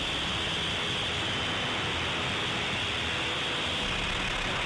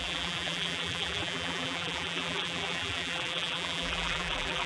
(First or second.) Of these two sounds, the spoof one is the second